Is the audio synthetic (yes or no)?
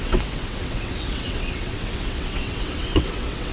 yes